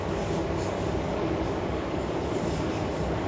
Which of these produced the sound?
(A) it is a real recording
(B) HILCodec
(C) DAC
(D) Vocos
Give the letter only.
C